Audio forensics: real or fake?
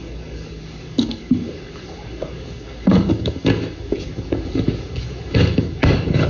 fake